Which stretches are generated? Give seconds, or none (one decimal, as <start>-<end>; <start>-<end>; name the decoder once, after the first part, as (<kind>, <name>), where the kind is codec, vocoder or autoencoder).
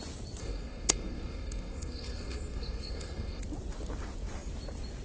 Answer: 0.4-3.4 (codec, SNAC)